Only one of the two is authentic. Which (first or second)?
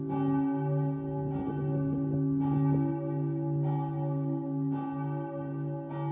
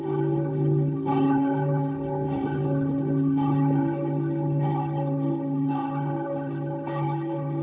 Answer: first